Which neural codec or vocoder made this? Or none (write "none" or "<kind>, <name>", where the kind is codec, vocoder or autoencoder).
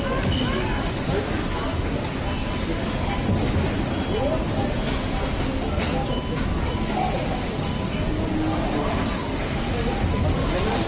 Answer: none